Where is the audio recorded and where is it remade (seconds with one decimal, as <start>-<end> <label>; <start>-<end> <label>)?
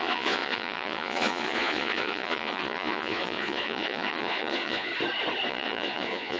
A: 0.0-4.9 remade; 4.9-5.5 recorded; 5.5-6.4 remade